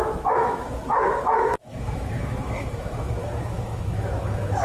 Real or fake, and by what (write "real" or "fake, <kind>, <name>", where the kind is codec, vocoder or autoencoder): fake, autoencoder, DAC-VAE